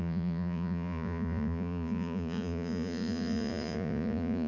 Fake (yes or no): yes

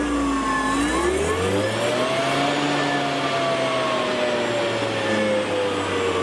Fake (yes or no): no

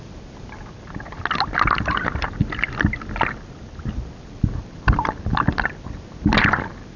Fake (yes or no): no